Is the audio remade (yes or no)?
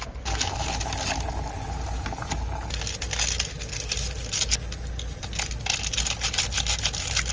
no